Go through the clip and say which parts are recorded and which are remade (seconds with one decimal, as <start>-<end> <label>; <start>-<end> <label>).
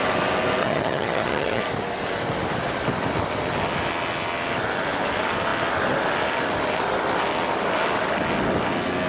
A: 0.0-0.6 recorded; 0.6-1.6 remade; 1.6-9.1 recorded